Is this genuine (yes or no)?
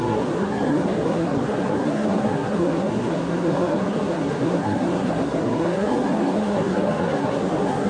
no